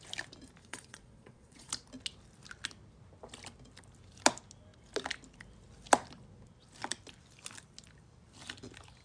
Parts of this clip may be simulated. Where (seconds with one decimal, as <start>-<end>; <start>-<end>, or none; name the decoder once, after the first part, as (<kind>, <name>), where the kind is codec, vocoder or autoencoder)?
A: 0.6-1.7 (vocoder, Vocos)